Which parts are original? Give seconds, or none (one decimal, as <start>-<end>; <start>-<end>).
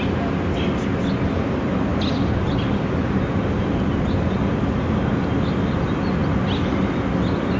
0.0-7.6